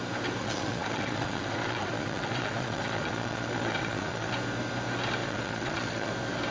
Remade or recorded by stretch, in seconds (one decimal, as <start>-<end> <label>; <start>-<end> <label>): 0.0-0.4 recorded; 0.4-4.3 remade; 4.3-5.2 recorded; 5.2-6.1 remade; 6.1-6.5 recorded